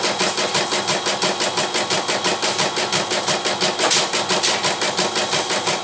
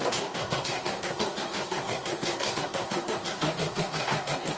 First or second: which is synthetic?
second